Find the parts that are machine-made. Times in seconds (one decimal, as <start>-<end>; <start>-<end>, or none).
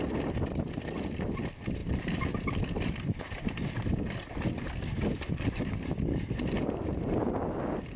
1.8-6.6